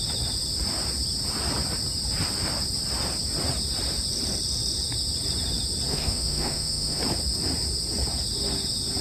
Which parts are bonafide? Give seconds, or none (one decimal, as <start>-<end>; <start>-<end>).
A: 0.0-5.9; 7.0-9.0